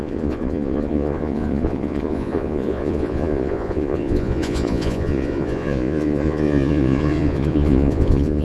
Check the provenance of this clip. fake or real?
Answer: fake